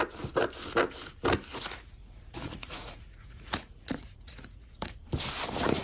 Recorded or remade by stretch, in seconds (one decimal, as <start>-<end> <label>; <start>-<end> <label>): 0.0-1.5 recorded; 1.5-5.0 remade; 5.0-5.8 recorded